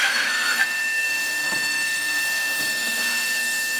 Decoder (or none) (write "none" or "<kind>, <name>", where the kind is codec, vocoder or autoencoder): codec, SNAC